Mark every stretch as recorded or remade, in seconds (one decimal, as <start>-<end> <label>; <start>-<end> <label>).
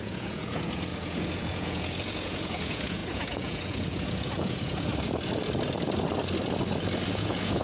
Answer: 0.0-4.9 remade; 4.9-7.1 recorded; 7.1-7.6 remade